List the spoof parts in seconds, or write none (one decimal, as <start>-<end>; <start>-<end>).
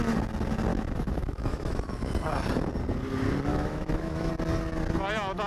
0.7-2.1; 3.5-4.3